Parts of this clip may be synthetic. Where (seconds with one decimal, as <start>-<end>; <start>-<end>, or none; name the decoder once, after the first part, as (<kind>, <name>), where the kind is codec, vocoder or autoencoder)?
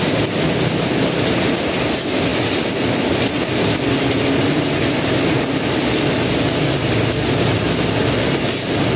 none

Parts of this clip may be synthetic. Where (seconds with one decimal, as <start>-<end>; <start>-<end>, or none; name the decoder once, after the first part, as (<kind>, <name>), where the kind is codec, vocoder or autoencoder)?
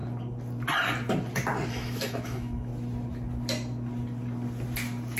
1.7-2.7 (autoencoder, DAC-VAE)